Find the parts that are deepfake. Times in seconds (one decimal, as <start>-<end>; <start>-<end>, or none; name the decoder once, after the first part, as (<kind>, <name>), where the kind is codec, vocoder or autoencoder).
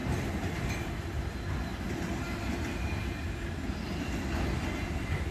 0.0-0.9 (vocoder, BigVGAN v2)